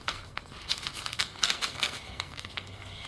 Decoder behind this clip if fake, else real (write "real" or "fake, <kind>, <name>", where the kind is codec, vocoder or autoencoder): fake, codec, SNAC